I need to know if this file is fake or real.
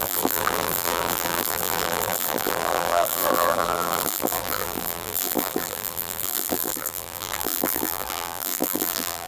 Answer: fake